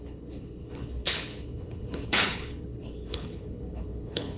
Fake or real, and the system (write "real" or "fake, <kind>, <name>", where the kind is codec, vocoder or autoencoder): fake, codec, HILCodec